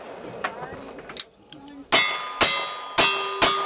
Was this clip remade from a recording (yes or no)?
no